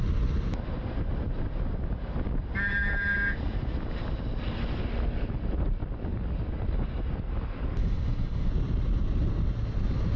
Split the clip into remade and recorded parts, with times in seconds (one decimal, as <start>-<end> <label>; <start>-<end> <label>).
0.0-7.8 recorded; 7.8-8.5 remade; 8.5-10.2 recorded